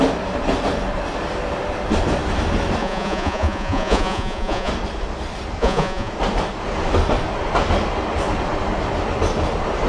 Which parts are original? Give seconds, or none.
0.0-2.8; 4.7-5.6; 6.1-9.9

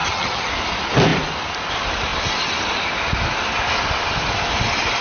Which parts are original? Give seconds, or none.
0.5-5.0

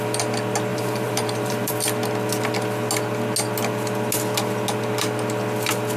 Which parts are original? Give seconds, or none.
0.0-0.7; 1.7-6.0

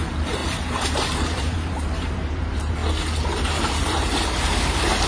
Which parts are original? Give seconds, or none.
2.8-3.6

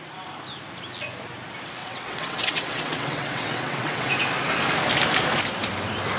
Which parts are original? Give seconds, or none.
0.0-1.8; 4.1-6.2

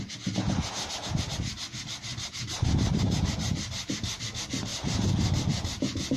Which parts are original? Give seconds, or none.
0.0-2.1; 4.2-4.7; 5.4-6.2

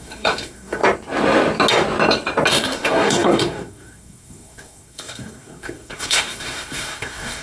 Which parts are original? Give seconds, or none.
0.8-2.5

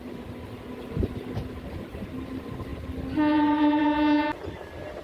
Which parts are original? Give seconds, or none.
0.0-5.0